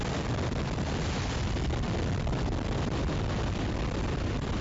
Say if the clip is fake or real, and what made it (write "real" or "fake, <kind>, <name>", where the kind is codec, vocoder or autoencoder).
real